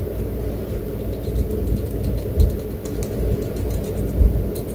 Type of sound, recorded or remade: recorded